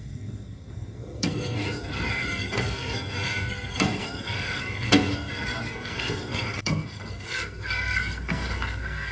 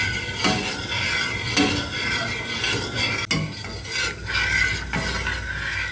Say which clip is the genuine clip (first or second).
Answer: second